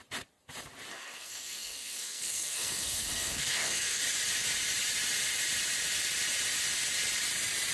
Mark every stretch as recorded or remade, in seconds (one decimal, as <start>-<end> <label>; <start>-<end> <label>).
0.0-0.9 recorded; 0.9-4.0 remade; 4.0-7.7 recorded